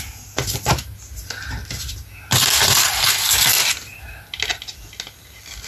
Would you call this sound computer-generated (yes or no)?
no